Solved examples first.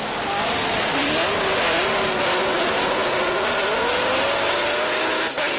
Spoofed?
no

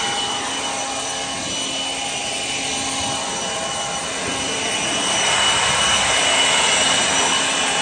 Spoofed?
no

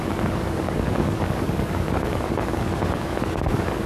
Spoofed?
yes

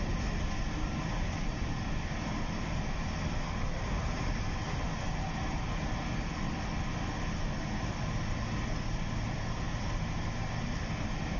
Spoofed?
no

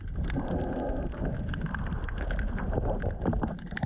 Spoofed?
no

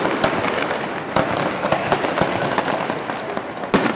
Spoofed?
no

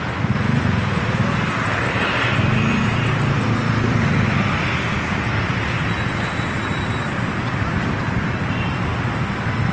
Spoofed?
no